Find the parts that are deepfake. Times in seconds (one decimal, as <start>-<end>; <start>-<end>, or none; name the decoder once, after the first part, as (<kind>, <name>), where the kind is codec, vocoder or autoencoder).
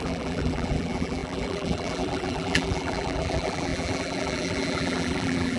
0.0-5.6 (vocoder, BigVGAN v2)